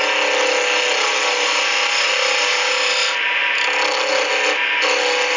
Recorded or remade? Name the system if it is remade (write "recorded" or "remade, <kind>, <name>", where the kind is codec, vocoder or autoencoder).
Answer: recorded